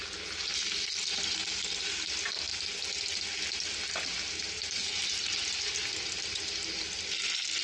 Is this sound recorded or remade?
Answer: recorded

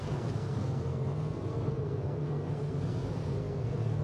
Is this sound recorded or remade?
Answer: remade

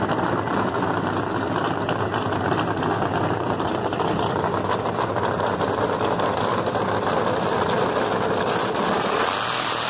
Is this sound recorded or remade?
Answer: recorded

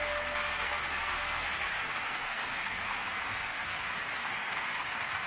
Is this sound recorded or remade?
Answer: remade